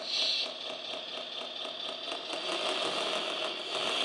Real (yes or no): yes